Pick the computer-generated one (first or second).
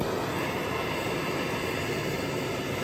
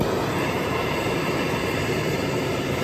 second